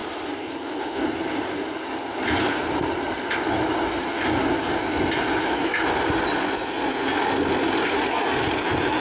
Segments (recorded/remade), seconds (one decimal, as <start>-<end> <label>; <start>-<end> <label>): 0.0-0.8 remade; 0.8-9.0 recorded